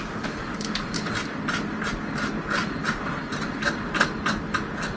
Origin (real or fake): real